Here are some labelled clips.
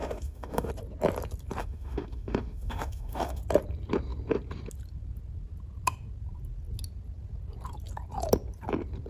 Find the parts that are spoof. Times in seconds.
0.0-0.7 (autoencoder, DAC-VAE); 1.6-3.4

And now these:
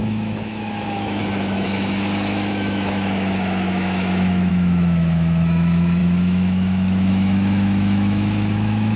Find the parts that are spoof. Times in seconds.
0.0-9.0 (autoencoder, DAC-VAE)